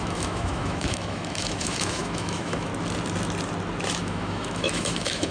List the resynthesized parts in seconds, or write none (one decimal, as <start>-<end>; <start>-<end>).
0.0-2.7; 4.0-5.3